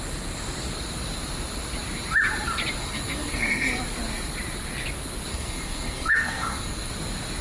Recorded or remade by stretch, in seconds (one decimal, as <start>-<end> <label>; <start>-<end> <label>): 0.0-2.8 recorded; 2.8-3.8 remade; 3.8-5.3 recorded; 5.3-6.9 remade; 6.9-7.4 recorded